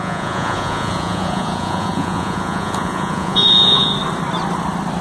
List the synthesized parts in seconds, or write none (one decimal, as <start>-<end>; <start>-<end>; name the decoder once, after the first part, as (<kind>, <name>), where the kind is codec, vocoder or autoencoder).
0.0-3.9 (vocoder, Vocos)